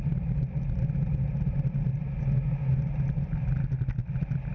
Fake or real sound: real